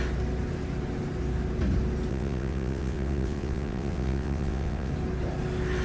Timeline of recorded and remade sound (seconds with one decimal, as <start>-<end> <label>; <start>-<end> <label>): 0.0-2.1 recorded; 2.1-4.9 remade; 4.9-5.8 recorded